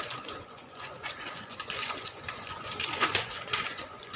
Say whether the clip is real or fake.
fake